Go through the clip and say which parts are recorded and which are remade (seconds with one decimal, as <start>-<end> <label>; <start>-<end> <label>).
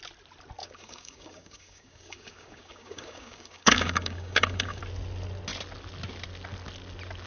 0.0-0.6 recorded; 0.6-4.8 remade; 4.8-7.3 recorded